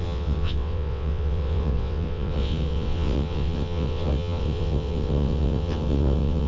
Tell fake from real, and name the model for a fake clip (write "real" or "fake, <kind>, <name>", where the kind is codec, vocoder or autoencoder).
fake, vocoder, WaveNeXt